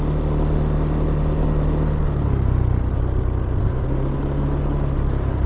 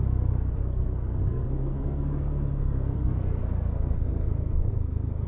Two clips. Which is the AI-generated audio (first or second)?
second